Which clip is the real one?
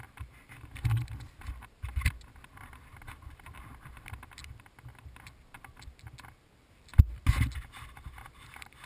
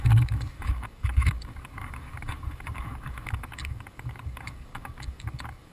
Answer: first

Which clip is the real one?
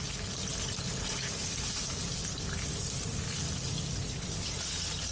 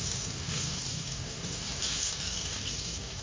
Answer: first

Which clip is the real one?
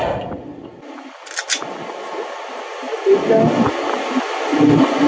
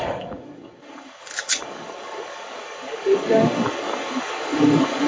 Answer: first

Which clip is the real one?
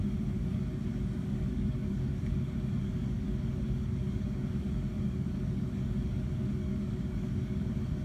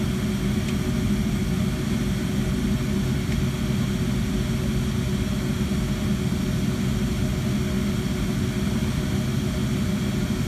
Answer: second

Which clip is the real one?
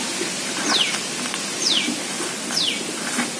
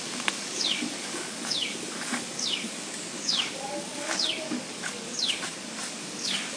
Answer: first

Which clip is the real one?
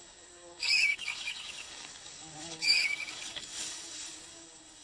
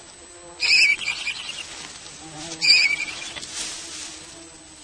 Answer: second